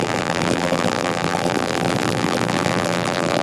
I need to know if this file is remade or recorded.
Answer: remade